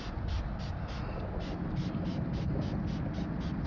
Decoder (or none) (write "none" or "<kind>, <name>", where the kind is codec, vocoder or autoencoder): none